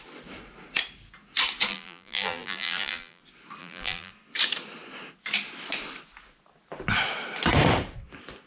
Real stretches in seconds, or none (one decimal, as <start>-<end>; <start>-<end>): 0.0-1.7; 3.2-3.6; 4.1-8.5